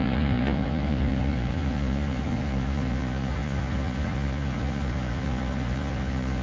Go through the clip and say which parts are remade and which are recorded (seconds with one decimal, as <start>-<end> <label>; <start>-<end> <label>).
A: 0.0-6.4 remade